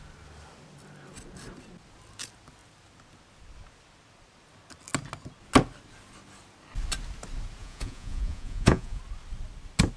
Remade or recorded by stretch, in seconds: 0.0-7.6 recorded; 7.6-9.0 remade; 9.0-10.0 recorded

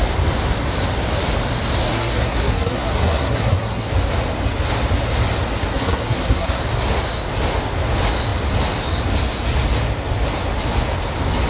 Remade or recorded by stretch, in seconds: 0.0-1.8 recorded; 1.8-3.9 remade; 3.9-5.6 recorded; 5.6-6.6 remade; 6.6-11.5 recorded

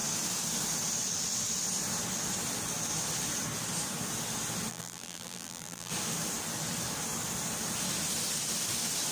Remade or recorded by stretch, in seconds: 0.0-4.7 recorded; 4.7-5.9 remade; 5.9-9.1 recorded

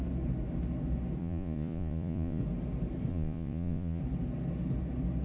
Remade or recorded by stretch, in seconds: 0.0-1.2 recorded; 1.2-2.4 remade; 2.4-3.1 recorded; 3.1-4.0 remade; 4.0-5.2 recorded

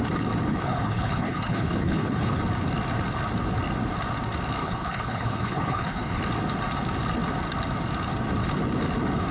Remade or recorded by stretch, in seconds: 0.0-0.5 recorded; 0.5-2.4 remade; 2.4-4.6 recorded; 4.6-6.2 remade; 6.2-9.3 recorded